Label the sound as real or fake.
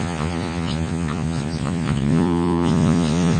fake